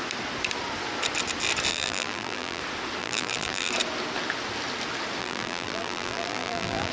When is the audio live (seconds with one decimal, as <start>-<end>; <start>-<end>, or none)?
0.0-1.7; 2.6-3.0; 3.7-5.2